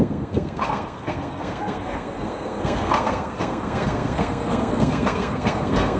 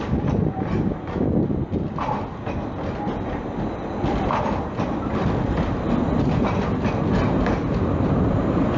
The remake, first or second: first